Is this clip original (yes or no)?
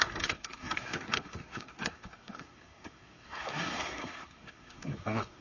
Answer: no